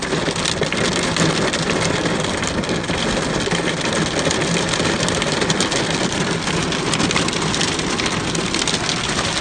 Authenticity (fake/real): real